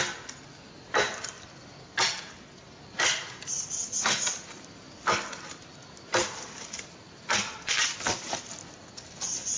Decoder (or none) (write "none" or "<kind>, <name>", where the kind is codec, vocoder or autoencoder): none